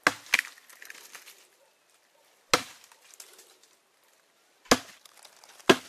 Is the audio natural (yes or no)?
yes